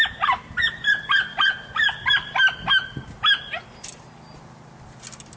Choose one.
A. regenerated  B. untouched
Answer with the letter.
B